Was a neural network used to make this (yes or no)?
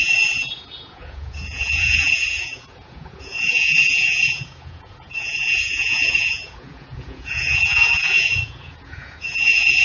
yes